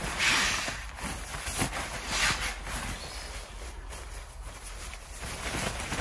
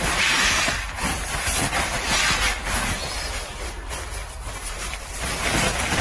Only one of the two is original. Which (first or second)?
first